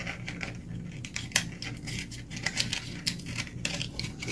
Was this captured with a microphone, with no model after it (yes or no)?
yes